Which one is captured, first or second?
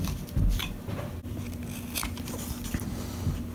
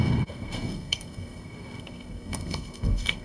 first